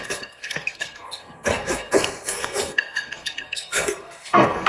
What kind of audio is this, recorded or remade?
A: remade